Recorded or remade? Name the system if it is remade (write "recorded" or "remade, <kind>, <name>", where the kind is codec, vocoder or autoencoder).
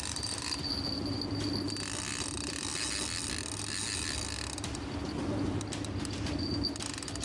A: recorded